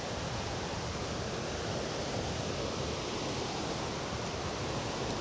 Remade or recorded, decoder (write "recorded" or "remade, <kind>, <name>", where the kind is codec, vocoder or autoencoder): recorded